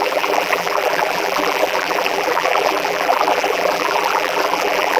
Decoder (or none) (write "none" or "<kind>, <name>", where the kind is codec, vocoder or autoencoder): vocoder, BigVGAN v2